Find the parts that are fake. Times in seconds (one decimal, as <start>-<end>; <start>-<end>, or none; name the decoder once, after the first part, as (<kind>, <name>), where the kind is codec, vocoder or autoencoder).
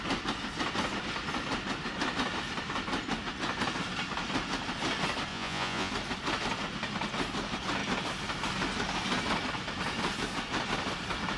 5.3-5.9 (vocoder, Vocos)